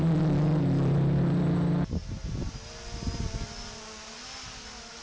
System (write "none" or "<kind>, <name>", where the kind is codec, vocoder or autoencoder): none